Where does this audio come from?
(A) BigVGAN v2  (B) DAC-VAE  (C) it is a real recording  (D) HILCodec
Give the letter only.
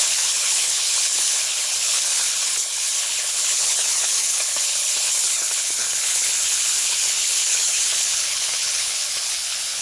D